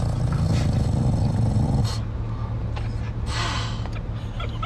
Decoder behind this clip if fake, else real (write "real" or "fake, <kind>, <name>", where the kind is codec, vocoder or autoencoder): real